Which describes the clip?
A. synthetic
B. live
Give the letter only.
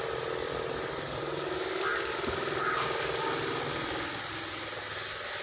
B